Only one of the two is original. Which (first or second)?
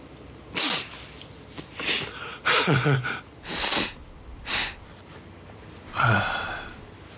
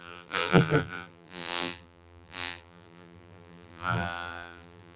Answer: first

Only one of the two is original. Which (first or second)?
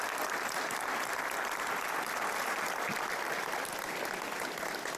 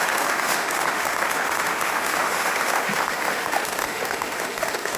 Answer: first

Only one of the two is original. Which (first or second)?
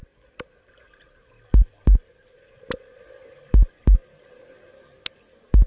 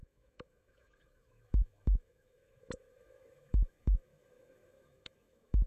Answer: first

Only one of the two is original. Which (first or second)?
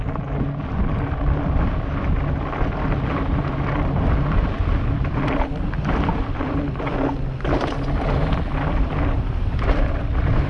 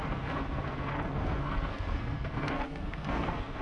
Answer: first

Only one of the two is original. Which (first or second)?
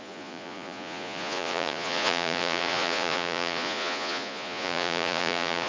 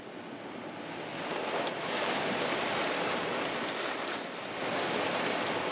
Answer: second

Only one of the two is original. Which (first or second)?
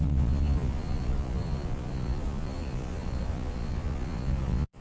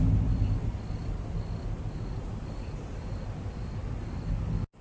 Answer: second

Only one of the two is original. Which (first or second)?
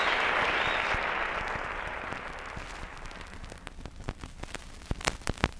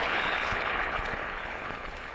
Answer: first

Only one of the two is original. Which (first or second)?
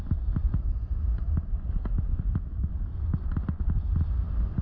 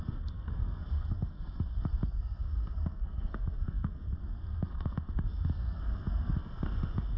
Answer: first